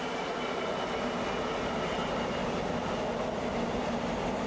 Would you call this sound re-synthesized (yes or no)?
no